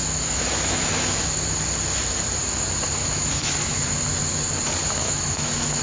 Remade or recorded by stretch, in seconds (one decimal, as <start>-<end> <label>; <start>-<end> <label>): 0.0-1.3 remade; 1.3-3.0 recorded; 3.0-3.7 remade; 3.7-5.0 recorded; 5.0-5.8 remade